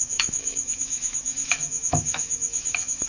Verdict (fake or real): fake